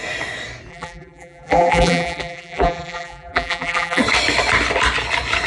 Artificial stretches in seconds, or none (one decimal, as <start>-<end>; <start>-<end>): 0.7-4.0